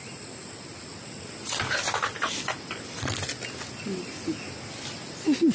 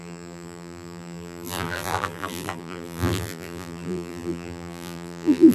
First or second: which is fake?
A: second